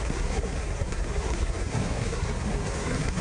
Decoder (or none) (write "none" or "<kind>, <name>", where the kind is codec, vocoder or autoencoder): codec, SNAC